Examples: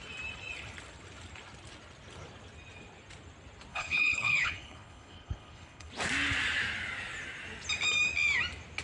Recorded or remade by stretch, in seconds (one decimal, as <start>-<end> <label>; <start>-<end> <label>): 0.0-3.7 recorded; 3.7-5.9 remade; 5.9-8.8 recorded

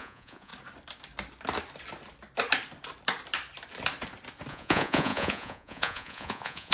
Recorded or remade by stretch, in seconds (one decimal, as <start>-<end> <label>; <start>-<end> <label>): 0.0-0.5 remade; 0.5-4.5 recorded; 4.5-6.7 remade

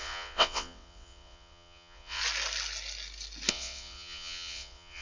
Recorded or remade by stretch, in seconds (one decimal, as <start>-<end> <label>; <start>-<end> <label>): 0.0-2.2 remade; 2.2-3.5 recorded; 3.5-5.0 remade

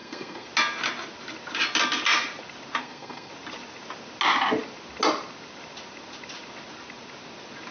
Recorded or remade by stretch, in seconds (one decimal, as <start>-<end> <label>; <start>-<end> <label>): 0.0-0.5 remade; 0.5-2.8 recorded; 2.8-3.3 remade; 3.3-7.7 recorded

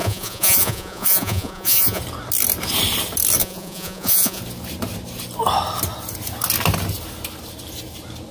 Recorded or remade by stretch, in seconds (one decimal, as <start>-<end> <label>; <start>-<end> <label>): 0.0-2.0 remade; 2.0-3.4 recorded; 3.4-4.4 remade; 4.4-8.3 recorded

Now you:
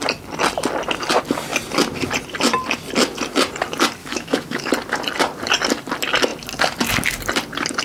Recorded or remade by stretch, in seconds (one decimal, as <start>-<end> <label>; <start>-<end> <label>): 0.0-4.0 recorded; 4.0-4.7 remade; 4.7-7.8 recorded

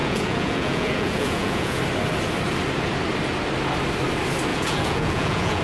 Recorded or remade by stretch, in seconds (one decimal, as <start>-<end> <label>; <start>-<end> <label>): 0.0-1.8 remade; 1.8-4.5 recorded; 4.5-5.6 remade

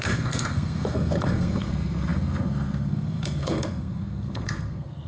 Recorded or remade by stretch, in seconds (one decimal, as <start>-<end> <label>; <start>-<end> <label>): 0.0-5.1 remade